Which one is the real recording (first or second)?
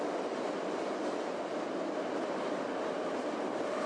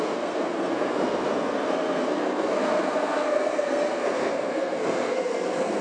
first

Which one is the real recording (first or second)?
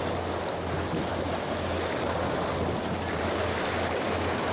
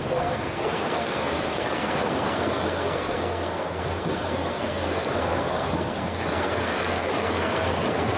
first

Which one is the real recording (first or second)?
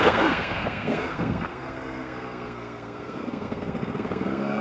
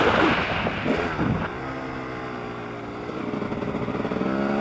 second